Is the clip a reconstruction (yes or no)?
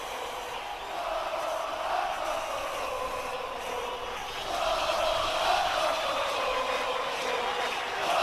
no